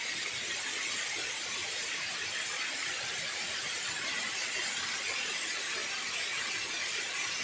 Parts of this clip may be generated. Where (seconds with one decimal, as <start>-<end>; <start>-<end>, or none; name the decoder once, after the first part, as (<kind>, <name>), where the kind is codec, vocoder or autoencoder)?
1.6-3.6 (vocoder, BigVGAN v2); 5.8-6.4